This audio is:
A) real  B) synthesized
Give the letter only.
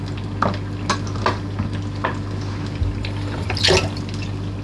A